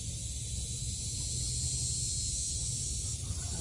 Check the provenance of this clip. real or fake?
real